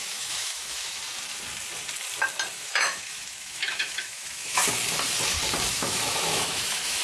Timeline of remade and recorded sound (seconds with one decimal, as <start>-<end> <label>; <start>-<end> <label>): 0.0-1.0 remade; 1.0-2.5 recorded; 2.5-4.6 remade; 4.6-5.7 recorded; 5.7-7.0 remade